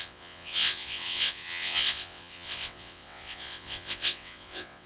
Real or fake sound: fake